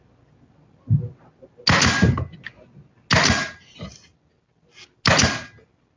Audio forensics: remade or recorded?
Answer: recorded